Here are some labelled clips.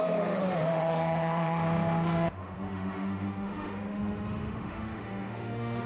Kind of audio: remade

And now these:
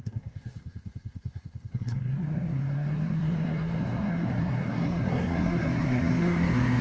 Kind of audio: remade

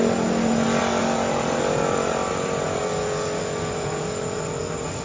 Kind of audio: recorded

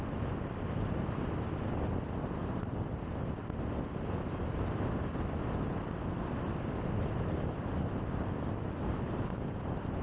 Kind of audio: recorded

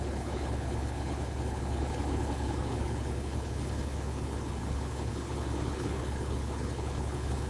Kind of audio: remade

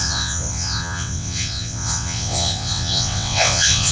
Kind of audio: remade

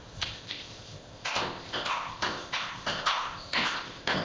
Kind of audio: remade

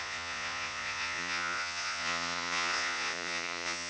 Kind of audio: remade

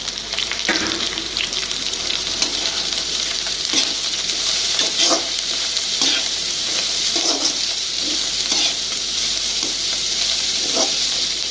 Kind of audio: remade